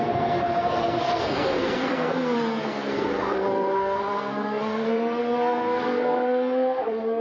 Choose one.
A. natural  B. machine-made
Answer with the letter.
B